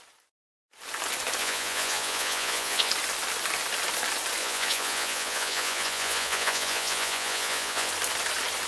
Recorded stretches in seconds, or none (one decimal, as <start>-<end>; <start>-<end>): 0.0-1.4; 2.9-4.4; 7.9-8.7